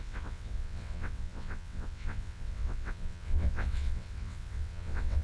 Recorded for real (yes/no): no